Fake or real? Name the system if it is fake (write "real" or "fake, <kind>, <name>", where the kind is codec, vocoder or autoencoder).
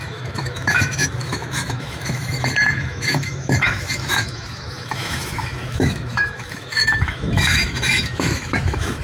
fake, autoencoder, DAC-VAE